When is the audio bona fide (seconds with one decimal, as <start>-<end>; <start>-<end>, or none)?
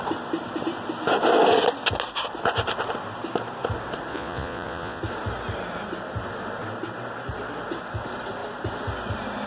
0.0-4.1; 5.0-9.5